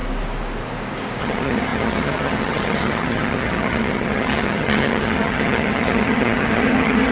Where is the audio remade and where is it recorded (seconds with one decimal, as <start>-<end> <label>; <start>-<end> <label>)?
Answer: 0.0-1.2 recorded; 1.2-7.1 remade